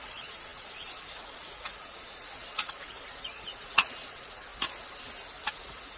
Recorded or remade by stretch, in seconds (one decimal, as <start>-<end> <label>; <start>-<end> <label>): 0.0-4.5 remade; 4.5-5.5 recorded; 5.5-6.0 remade